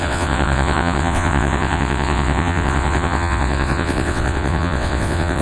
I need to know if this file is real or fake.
fake